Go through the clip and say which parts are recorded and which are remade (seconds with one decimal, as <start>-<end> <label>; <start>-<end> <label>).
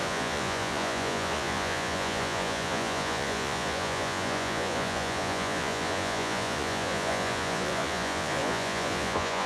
0.0-9.5 remade